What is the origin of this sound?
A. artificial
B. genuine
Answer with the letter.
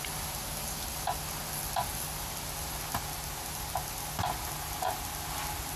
B